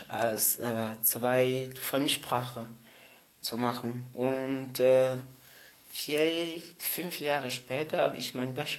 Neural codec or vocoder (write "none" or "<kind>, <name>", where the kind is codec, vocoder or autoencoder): codec, SNAC